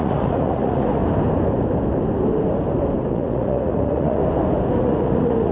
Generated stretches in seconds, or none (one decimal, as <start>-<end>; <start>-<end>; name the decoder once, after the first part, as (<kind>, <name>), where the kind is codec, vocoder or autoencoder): 0.0-1.0 (vocoder, Vocos); 3.1-4.2; 4.8-5.5